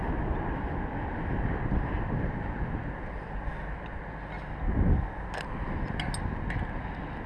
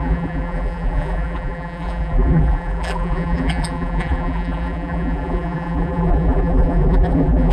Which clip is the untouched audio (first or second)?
first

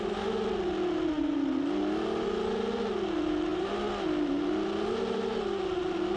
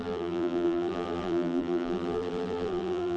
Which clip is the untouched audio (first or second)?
first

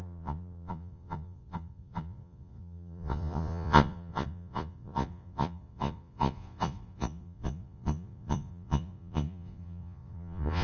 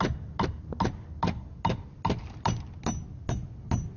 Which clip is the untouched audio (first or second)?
second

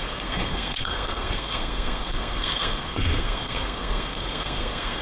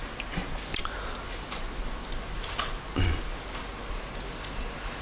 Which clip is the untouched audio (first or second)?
second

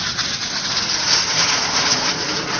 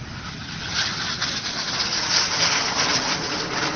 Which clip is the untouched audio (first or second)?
second